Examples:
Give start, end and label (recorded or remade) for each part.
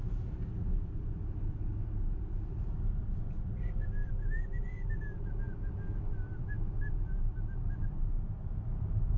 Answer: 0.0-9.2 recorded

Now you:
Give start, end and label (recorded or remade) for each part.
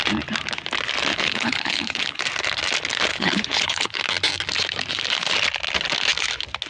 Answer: 0.0-1.1 recorded; 1.1-2.2 remade; 2.2-3.1 recorded; 3.1-4.0 remade; 4.0-6.7 recorded